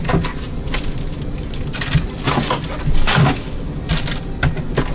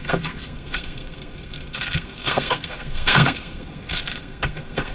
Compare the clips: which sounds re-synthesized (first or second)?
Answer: second